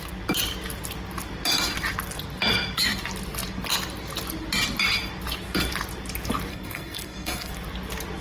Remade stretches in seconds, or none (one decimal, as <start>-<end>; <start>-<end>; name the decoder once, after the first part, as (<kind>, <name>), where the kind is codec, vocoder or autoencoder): 6.5-7.5 (codec, SNAC)